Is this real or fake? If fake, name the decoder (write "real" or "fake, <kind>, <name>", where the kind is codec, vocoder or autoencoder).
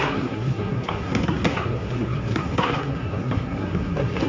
fake, codec, SNAC